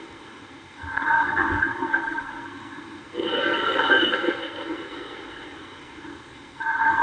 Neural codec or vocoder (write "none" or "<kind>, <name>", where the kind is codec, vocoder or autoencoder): codec, SNAC